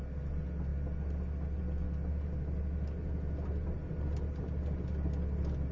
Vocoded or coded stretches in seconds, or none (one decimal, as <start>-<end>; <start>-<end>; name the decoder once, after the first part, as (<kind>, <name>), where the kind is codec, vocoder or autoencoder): none